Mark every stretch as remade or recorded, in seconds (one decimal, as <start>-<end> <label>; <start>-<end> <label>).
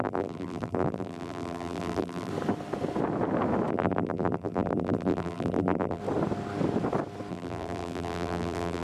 0.0-2.3 remade; 2.3-3.7 recorded; 3.7-6.0 remade; 6.0-7.3 recorded; 7.3-8.8 remade